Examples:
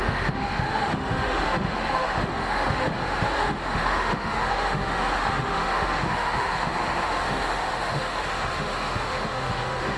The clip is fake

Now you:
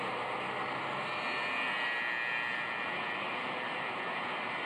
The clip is real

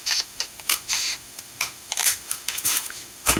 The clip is fake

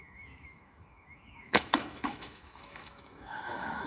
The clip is fake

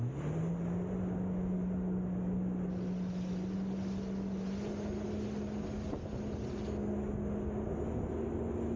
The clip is real